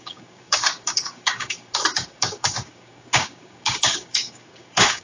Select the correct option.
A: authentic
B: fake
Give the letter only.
B